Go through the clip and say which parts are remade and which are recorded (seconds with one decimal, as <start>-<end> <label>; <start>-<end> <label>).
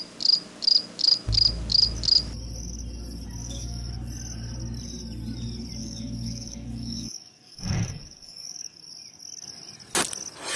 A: 0.0-3.4 recorded; 3.4-3.9 remade; 3.9-5.8 recorded; 5.8-8.9 remade; 8.9-10.6 recorded